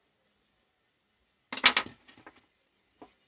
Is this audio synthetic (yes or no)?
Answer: no